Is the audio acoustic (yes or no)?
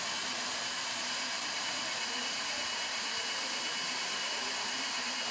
no